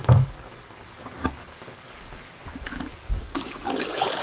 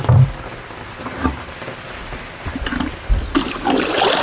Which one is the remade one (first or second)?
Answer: first